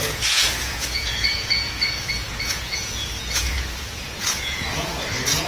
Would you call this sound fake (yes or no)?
yes